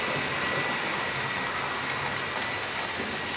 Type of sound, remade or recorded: recorded